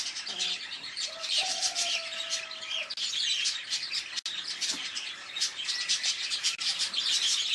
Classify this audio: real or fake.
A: real